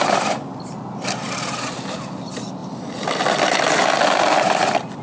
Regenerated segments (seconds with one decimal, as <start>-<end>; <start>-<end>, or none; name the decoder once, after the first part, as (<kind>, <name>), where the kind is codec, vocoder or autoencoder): 0.0-2.6 (vocoder, BigVGAN v2); 3.4-5.0